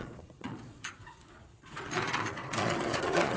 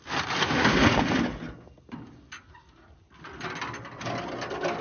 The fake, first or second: first